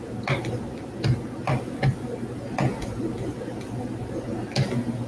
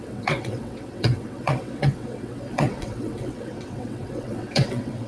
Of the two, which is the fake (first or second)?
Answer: second